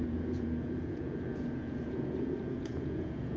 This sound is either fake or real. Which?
fake